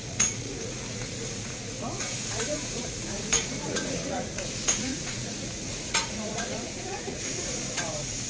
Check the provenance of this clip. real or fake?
fake